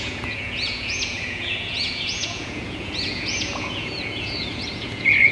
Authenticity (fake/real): fake